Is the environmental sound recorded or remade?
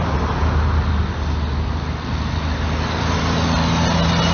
recorded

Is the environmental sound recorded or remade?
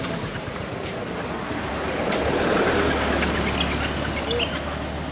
recorded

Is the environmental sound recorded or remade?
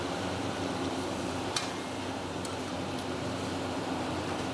remade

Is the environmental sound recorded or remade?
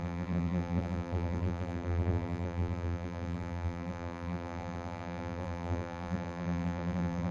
remade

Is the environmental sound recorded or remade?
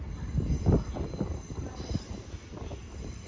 remade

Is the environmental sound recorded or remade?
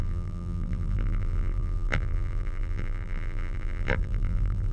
remade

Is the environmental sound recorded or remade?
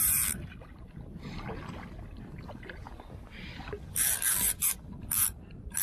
remade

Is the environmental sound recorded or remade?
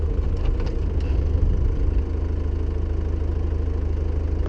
recorded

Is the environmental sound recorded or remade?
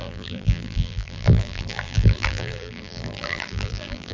remade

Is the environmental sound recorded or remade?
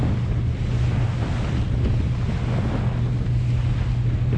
recorded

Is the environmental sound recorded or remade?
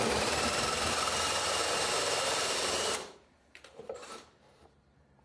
remade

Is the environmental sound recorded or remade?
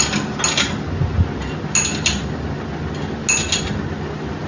recorded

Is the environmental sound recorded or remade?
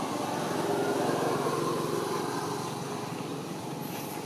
recorded